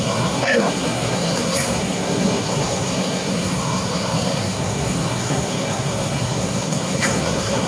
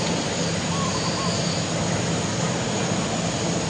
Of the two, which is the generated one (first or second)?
first